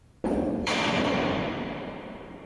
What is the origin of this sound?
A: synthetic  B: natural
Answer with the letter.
A